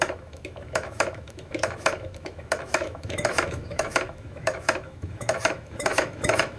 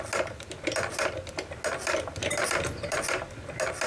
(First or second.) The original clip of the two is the second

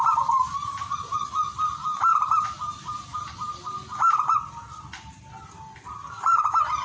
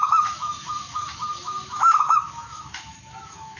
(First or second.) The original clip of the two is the first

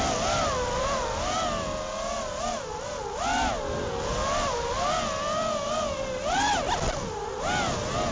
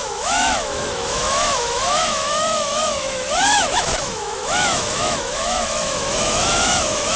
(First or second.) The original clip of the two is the first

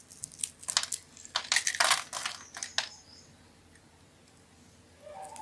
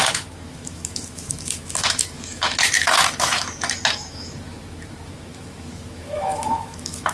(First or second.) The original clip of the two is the first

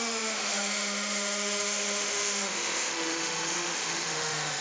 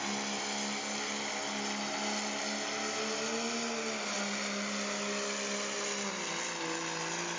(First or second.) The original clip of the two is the second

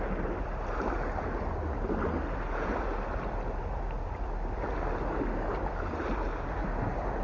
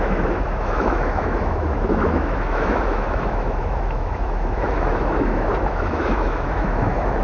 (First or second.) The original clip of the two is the first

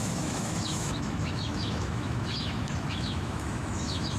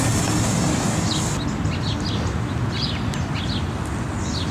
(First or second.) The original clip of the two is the second